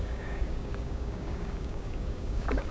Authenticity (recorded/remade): remade